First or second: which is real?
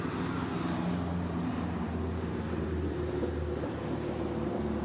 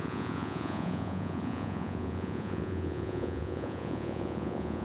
first